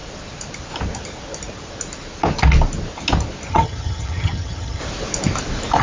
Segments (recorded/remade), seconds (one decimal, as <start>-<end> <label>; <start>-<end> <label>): 0.0-3.5 recorded; 3.5-4.8 remade; 4.8-5.8 recorded